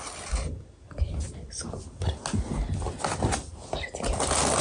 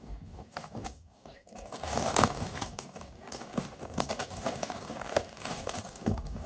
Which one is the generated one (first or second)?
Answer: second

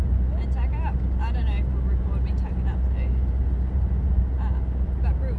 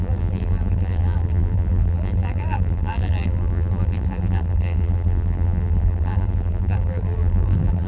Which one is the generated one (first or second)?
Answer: second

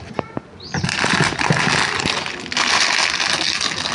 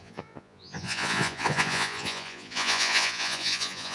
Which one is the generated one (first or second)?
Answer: second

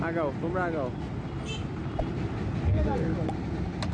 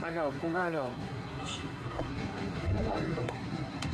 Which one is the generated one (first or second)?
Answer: second